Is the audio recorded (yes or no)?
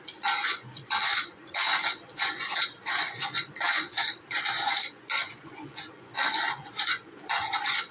no